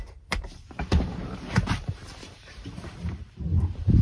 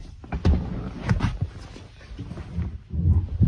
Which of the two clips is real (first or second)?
second